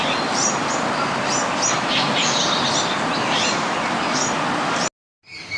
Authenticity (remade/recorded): recorded